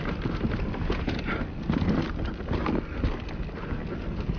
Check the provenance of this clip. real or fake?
real